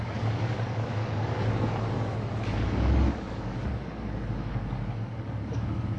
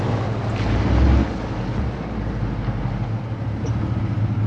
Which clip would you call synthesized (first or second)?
first